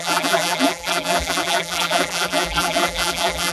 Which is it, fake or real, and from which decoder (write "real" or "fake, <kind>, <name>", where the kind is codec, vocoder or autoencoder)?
fake, vocoder, BigVGAN v2